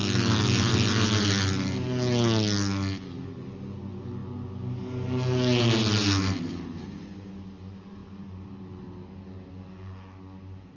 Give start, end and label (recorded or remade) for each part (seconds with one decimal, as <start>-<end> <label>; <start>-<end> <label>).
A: 0.0-10.8 recorded